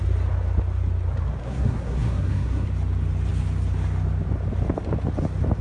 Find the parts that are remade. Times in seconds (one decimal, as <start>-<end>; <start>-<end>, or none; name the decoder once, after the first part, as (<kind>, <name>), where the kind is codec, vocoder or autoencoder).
1.4-2.7 (codec, SNAC)